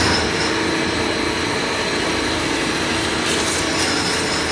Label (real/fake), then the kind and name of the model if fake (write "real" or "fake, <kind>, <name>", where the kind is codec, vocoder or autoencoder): real